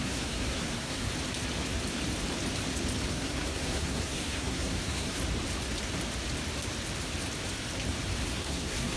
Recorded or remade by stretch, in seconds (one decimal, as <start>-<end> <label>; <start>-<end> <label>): 0.0-1.1 remade; 1.1-3.1 recorded; 3.1-5.2 remade; 5.2-8.2 recorded; 8.2-9.0 remade